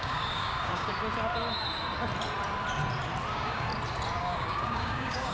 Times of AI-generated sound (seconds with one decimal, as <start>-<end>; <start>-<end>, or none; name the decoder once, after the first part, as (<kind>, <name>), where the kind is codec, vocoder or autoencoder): 0.0-0.9 (codec, DAC); 3.3-3.7; 4.2-5.3